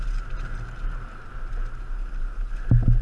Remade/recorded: recorded